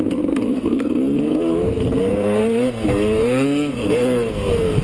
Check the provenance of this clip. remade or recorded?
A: remade